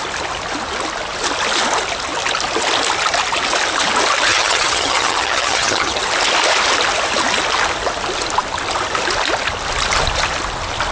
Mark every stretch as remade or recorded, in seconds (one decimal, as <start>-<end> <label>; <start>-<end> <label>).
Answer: 0.0-4.3 recorded; 4.3-6.0 remade; 6.0-10.9 recorded